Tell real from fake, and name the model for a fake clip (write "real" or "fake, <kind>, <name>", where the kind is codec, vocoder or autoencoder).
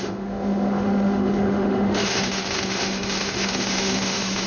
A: fake, autoencoder, DAC-VAE